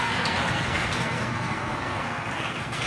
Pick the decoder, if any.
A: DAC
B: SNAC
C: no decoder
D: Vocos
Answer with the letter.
B